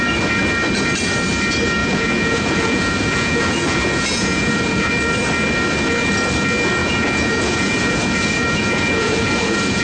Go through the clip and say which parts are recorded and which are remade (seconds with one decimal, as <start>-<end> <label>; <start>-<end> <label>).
0.0-1.8 recorded; 1.8-4.9 remade; 4.9-6.8 recorded; 6.8-9.8 remade